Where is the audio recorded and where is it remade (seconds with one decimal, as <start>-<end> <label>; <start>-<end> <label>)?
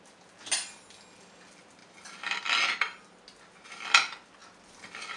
0.0-5.2 recorded